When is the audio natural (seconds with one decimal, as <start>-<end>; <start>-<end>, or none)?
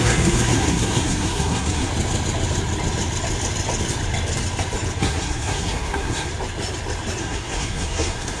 1.9-5.0; 6.3-7.2